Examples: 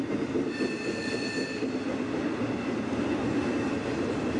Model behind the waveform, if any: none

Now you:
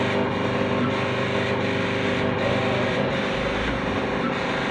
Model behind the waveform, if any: none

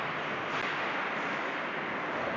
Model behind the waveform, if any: none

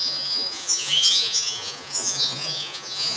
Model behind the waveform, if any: vocoder, Vocos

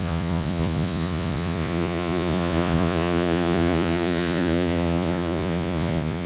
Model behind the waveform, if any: vocoder, Vocos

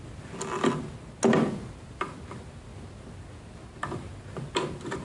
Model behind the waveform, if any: none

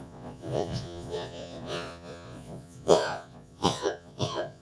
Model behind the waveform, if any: vocoder, Vocos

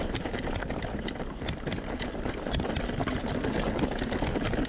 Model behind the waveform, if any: none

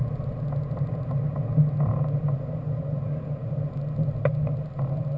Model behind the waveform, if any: none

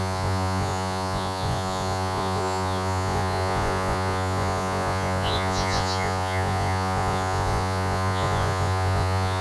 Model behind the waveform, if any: vocoder, Vocos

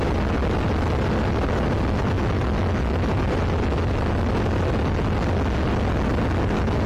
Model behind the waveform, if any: none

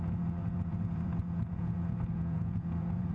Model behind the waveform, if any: vocoder, Vocos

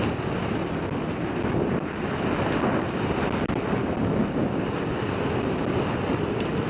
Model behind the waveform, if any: none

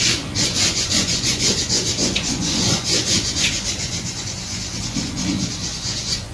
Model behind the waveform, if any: vocoder, Vocos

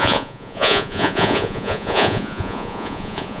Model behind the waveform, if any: vocoder, Vocos